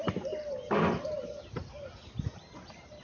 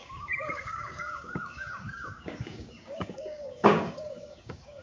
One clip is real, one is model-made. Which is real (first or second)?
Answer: first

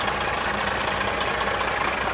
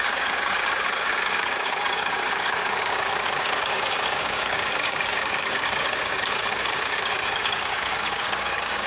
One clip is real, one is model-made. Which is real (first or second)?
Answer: first